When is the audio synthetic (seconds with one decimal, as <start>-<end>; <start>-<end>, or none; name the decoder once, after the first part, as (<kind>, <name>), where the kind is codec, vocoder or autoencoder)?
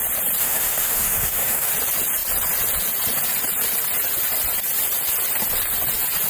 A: 0.4-1.7 (autoencoder, DAC-VAE)